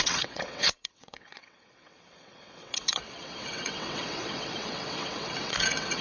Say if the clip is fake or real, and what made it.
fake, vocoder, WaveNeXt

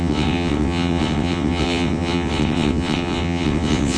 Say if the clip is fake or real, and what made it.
fake, vocoder, WaveNeXt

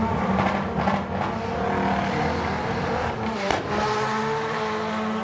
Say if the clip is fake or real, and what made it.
real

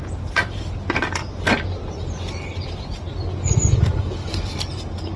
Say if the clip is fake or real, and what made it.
real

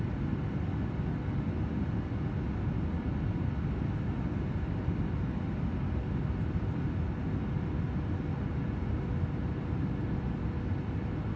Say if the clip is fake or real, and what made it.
real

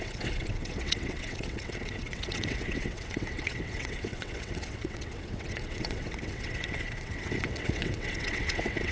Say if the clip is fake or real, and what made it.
fake, vocoder, WaveNeXt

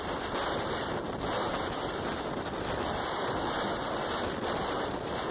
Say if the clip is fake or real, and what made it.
real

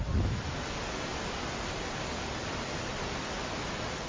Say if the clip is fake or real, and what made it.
real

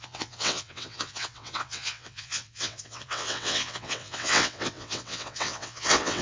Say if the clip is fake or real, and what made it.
fake, vocoder, WaveNeXt